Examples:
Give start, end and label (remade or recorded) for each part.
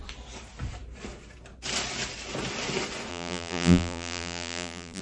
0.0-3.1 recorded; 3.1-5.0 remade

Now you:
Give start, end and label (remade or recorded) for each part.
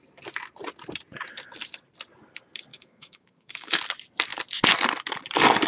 0.0-2.7 recorded; 2.7-3.8 remade; 3.8-5.7 recorded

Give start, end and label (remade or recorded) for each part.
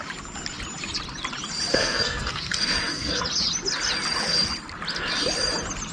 0.0-1.7 recorded; 1.7-3.2 remade; 3.2-5.9 recorded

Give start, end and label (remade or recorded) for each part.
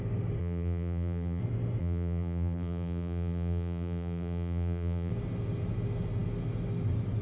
0.0-0.4 recorded; 0.4-1.4 remade; 1.4-1.8 recorded; 1.8-5.1 remade; 5.1-7.2 recorded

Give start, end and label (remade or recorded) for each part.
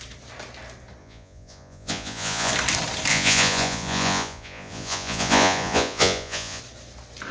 0.0-1.0 recorded; 1.0-2.5 remade; 2.5-3.1 recorded; 3.1-6.6 remade; 6.6-7.3 recorded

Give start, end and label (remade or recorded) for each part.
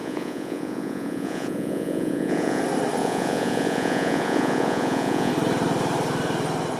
0.0-2.6 remade; 2.6-3.0 recorded; 3.0-5.3 remade; 5.3-6.8 recorded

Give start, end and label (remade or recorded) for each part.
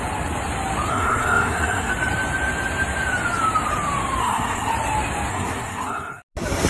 0.0-0.9 recorded; 0.9-1.9 remade; 1.9-4.2 recorded; 4.2-4.7 remade; 4.7-5.3 recorded; 5.3-6.2 remade; 6.2-6.7 recorded